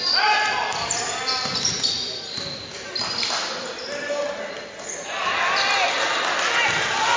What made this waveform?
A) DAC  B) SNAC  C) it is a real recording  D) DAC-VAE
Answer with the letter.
C